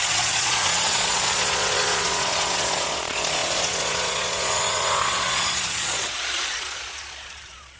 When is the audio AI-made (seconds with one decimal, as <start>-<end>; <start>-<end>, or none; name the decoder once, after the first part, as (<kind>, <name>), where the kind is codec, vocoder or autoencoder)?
0.0-7.8 (vocoder, Vocos)